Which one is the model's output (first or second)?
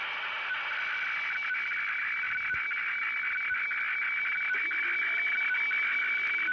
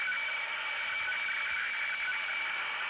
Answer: second